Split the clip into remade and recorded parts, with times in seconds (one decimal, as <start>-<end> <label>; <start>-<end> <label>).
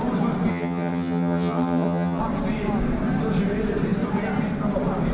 0.0-0.5 recorded; 0.5-2.2 remade; 2.2-5.1 recorded